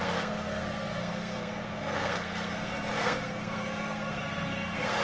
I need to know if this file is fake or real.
fake